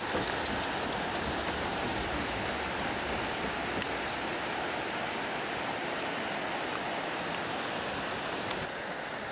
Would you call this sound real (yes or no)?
yes